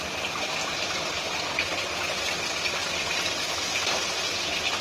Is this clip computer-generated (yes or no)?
no